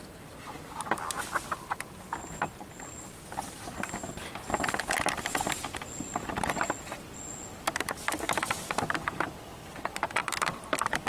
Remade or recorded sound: recorded